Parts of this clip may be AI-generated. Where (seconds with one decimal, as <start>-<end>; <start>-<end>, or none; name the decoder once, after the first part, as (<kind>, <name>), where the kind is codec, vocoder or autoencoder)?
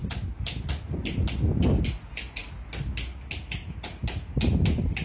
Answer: none